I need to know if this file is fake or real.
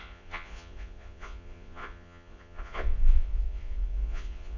fake